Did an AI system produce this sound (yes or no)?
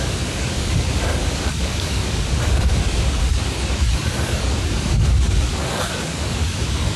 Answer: yes